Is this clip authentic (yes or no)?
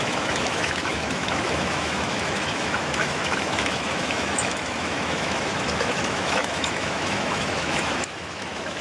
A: no